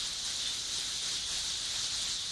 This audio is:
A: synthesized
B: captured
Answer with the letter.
B